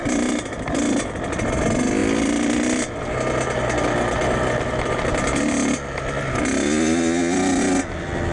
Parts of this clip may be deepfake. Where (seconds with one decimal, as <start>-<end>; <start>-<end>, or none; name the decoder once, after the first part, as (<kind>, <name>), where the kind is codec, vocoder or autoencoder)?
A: none